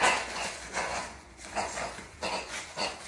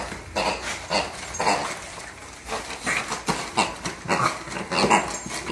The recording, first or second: second